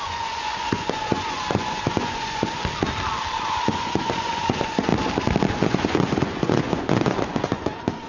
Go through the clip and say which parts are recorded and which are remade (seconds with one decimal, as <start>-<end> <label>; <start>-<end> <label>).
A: 0.0-2.6 remade; 2.6-3.4 recorded; 3.4-4.9 remade; 4.9-5.5 recorded; 5.5-8.1 remade